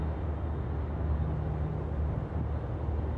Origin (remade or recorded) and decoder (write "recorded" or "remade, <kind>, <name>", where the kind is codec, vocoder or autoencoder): recorded